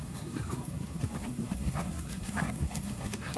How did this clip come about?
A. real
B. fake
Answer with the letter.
B